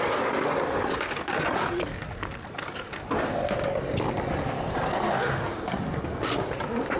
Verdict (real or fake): real